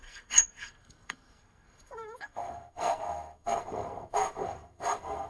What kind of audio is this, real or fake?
fake